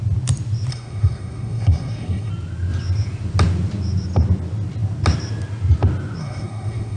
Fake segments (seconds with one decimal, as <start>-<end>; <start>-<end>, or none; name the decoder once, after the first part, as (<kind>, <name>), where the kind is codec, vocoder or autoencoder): 0.7-2.3 (codec, SNAC); 6.2-7.0